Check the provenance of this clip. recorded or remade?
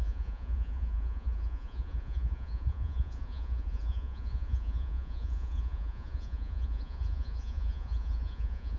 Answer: remade